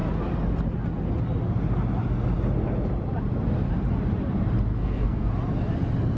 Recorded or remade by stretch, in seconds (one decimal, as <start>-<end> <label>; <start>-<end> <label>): 0.0-4.7 recorded; 4.7-5.3 remade; 5.3-6.2 recorded